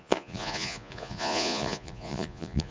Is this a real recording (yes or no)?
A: no